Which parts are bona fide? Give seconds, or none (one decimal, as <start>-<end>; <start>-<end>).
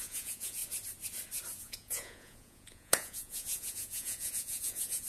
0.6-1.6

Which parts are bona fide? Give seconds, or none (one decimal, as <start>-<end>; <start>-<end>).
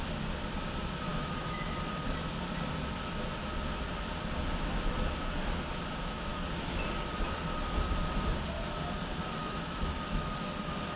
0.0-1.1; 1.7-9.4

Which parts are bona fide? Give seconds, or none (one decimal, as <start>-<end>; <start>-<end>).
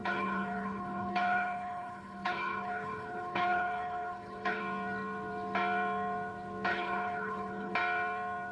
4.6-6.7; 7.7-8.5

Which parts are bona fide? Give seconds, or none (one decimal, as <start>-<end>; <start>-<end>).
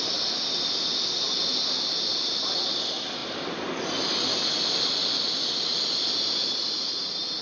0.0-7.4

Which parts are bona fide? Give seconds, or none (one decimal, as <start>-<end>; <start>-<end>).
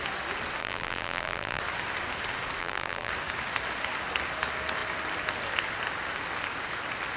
0.0-0.6; 1.6-2.6; 3.1-7.2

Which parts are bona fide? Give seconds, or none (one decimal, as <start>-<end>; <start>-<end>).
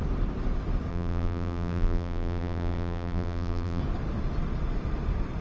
0.0-0.9; 3.8-5.4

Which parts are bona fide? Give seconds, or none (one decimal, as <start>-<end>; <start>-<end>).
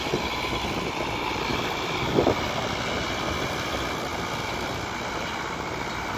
0.0-6.2